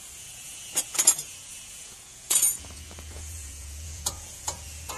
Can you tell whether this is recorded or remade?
remade